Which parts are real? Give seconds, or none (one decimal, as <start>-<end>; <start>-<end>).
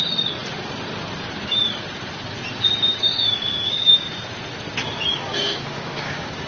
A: 0.0-2.9; 4.1-5.1